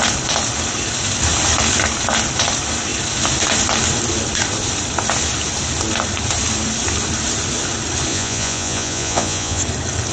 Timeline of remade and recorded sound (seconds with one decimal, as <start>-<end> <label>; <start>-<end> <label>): 0.0-8.1 recorded; 8.1-9.6 remade; 9.6-10.1 recorded